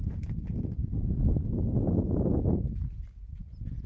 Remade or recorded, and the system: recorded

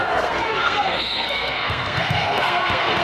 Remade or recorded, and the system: remade, codec, SNAC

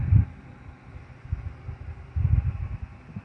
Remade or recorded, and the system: recorded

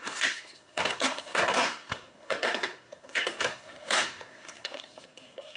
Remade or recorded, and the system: remade, codec, SNAC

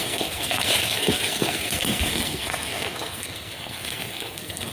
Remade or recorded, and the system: remade, codec, SNAC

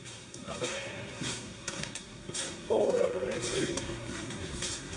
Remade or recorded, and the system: remade, codec, SNAC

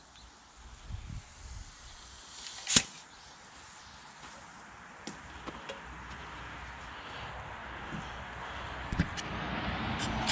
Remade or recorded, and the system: recorded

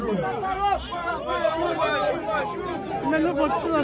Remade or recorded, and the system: recorded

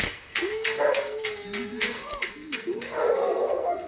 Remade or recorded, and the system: remade, codec, SNAC